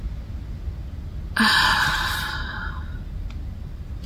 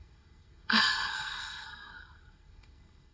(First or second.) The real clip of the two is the first